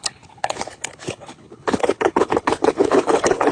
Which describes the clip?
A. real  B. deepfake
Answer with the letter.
B